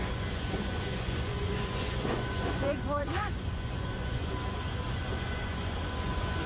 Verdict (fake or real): fake